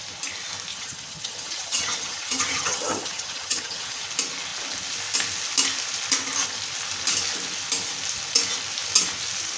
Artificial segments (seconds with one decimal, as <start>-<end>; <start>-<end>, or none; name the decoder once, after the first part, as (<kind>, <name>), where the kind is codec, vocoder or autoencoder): 0.7-4.0 (vocoder, HiFi-GAN)